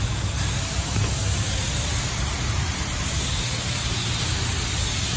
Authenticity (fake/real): real